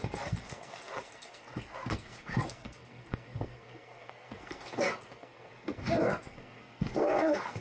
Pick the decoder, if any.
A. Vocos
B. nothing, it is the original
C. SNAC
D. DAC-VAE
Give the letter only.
C